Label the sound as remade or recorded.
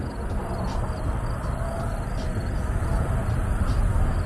recorded